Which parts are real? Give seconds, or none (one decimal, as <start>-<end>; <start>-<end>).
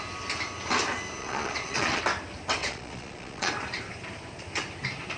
0.0-1.2; 2.0-2.6; 3.5-5.2